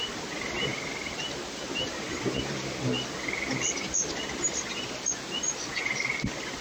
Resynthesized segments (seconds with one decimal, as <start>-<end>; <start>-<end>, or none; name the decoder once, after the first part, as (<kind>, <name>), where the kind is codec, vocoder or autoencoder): none